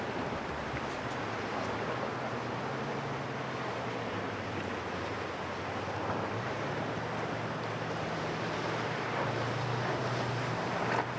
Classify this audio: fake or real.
fake